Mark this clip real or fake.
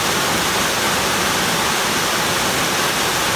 real